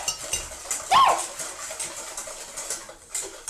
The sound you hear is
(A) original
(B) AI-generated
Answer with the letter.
A